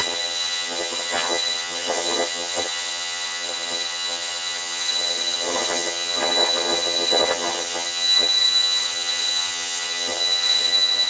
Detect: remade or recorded remade